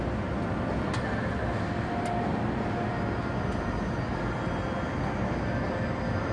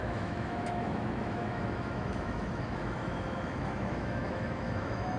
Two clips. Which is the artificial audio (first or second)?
second